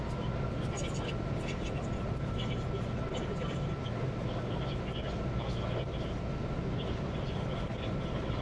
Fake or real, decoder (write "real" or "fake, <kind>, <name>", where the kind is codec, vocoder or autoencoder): real